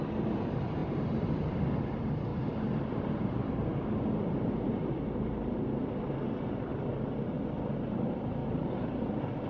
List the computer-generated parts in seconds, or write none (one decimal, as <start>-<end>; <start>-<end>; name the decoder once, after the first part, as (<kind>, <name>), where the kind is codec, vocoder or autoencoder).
0.8-1.6 (vocoder, BigVGAN v2); 2.3-3.5; 8.4-9.1